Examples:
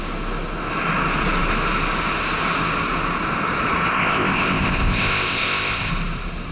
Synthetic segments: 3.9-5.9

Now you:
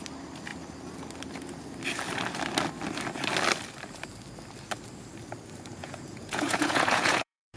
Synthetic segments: 5.8-7.6

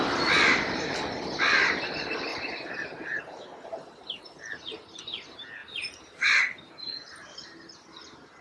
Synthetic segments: 2.3-3.2; 5.6-6.4

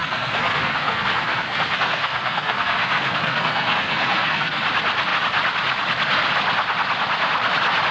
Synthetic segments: 0.0-4.6